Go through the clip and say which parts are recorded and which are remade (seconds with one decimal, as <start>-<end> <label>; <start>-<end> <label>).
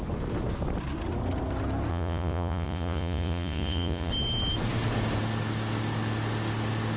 0.0-1.9 recorded; 1.9-4.1 remade; 4.1-7.0 recorded